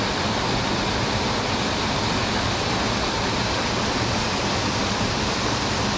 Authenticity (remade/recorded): recorded